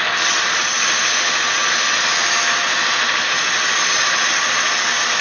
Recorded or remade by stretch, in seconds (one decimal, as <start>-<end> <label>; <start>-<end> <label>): 0.0-5.2 recorded